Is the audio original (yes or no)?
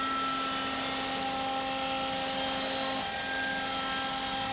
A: yes